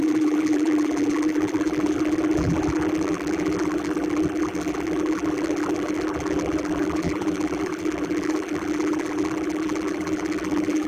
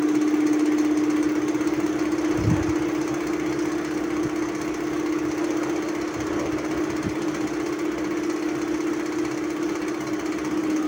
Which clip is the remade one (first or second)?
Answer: first